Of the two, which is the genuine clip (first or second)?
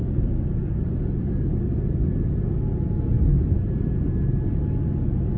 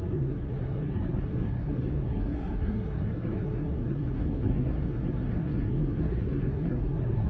first